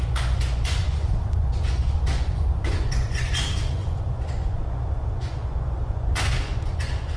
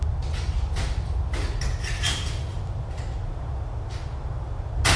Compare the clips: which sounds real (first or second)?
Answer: second